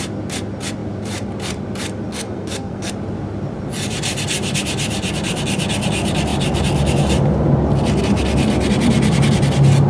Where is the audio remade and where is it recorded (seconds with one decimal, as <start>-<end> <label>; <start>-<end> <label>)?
0.0-2.1 recorded; 2.1-2.9 remade; 2.9-9.9 recorded